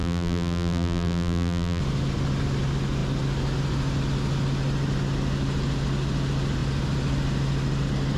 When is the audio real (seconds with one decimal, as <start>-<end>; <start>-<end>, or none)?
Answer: 1.8-8.2